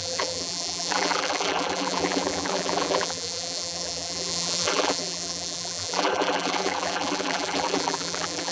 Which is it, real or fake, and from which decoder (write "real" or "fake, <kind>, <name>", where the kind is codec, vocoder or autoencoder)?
fake, vocoder, BigVGAN v2